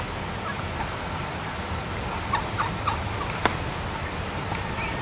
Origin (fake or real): real